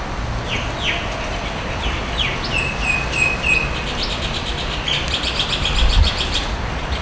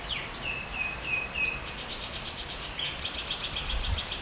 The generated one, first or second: second